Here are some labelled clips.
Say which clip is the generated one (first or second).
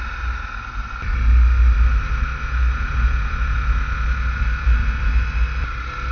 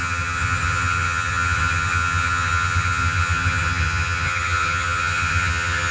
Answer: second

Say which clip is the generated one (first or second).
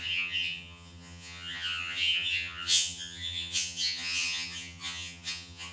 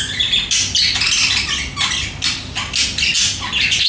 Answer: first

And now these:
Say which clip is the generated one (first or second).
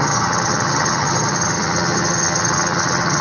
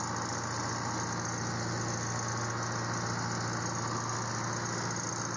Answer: first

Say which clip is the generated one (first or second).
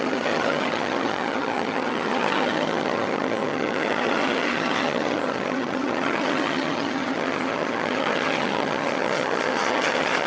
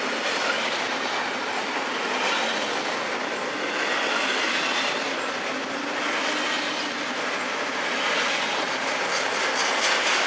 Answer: first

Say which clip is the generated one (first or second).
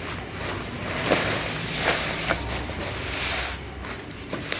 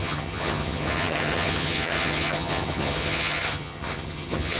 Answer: second